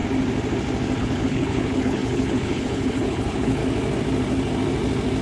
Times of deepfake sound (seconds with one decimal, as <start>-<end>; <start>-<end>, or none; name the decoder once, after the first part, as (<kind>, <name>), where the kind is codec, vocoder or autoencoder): 1.0-3.6 (codec, HILCodec)